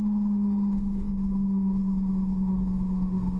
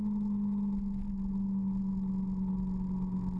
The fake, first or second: first